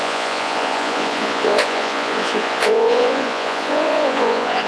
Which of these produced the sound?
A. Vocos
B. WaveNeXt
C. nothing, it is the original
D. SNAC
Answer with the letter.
A